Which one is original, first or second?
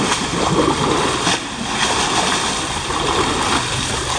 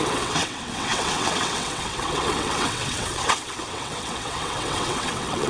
first